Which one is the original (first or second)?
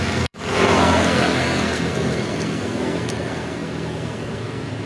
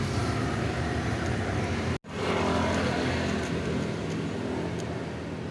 second